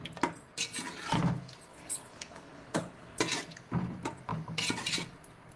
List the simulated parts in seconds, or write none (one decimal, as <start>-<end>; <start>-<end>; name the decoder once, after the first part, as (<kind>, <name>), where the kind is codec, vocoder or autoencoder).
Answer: 1.7-3.2 (codec, HILCodec)